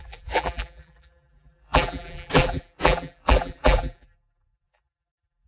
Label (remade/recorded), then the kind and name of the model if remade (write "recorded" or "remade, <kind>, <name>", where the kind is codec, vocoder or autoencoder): remade, vocoder, BigVGAN v2